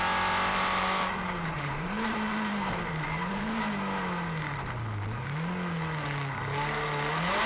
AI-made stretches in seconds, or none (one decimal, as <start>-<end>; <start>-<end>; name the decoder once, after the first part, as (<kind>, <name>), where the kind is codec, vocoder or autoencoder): 0.5-3.6 (vocoder, BigVGAN v2)